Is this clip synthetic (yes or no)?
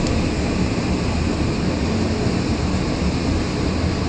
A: no